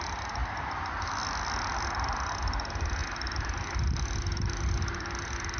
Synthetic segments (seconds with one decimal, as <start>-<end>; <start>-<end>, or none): none